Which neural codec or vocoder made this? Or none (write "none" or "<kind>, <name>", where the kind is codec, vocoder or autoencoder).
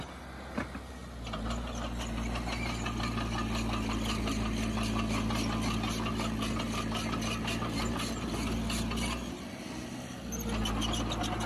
none